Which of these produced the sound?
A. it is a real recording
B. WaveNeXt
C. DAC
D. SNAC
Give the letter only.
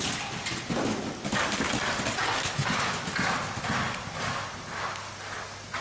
A